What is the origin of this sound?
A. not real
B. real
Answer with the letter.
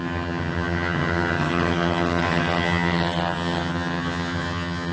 A